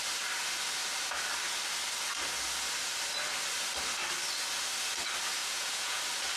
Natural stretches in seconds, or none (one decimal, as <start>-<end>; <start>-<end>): 0.0-5.4; 6.0-6.4

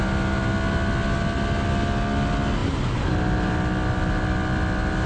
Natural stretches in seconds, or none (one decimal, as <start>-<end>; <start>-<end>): 0.0-5.1